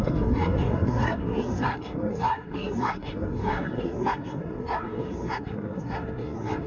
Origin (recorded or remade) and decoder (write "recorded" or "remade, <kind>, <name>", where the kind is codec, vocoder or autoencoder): remade, codec, SNAC